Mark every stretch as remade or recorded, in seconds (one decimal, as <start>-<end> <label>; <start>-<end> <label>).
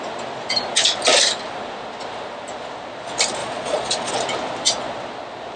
0.0-3.4 recorded; 3.4-4.1 remade; 4.1-5.6 recorded